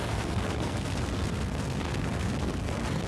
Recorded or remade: remade